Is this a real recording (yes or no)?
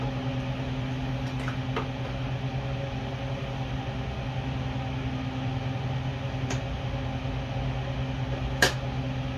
yes